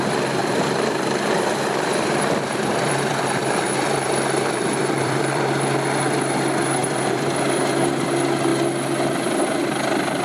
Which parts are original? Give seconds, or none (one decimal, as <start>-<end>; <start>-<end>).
0.0-0.4; 5.5-6.8; 7.4-10.2